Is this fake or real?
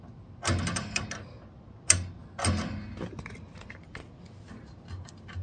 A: real